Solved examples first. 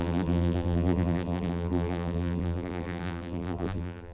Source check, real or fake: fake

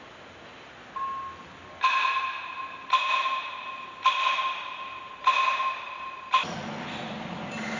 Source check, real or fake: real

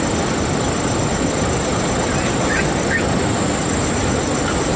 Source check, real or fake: real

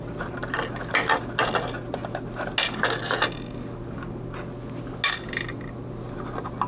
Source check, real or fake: real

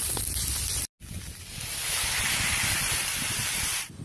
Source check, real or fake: real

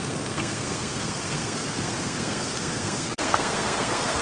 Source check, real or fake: fake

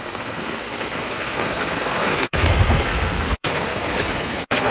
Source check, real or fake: fake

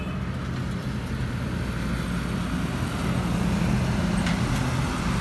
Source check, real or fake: real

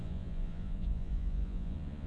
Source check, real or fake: fake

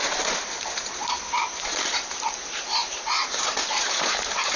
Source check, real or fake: fake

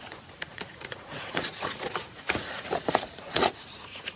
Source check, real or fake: fake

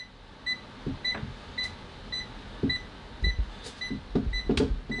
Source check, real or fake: real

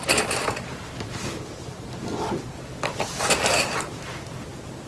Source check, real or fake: real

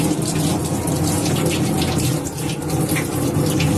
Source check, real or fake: real